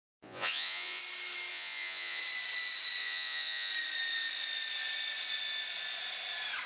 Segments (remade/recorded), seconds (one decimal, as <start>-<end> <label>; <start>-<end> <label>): 0.0-1.0 remade; 1.0-1.5 recorded; 1.5-2.2 remade; 2.2-3.0 recorded; 3.0-3.7 remade; 3.7-6.7 recorded